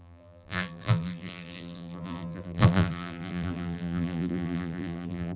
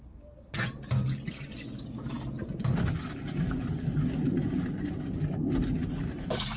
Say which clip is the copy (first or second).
first